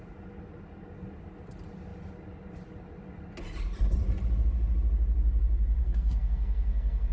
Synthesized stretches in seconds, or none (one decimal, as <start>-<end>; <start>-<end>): 5.8-7.1